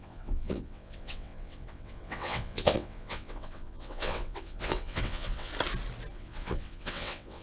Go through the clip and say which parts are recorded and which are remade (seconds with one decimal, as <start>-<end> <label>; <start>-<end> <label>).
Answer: 0.0-5.5 remade; 5.5-6.1 recorded; 6.1-7.4 remade